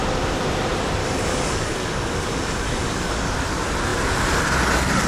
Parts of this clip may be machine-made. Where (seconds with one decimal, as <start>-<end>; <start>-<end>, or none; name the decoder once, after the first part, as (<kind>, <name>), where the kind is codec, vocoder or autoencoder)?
1.0-3.3 (codec, DAC)